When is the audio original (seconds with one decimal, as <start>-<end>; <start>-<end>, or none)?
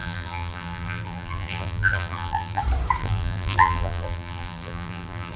2.6-3.0